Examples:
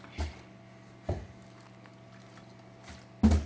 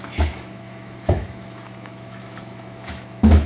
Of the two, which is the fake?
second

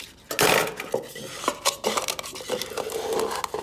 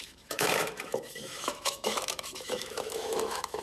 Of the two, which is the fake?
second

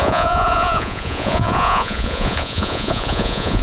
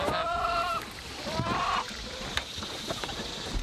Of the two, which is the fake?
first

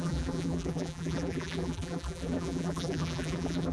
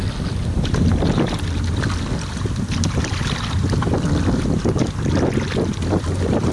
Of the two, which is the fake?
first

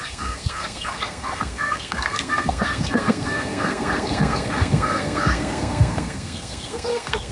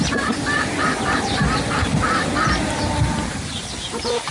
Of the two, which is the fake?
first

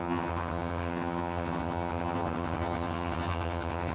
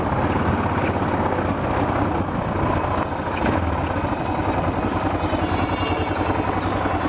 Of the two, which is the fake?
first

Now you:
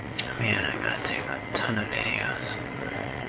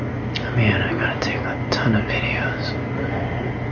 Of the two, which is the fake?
first